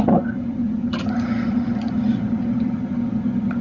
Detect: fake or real fake